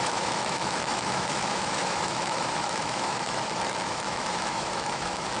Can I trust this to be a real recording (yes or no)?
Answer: no